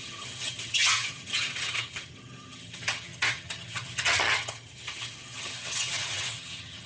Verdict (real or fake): fake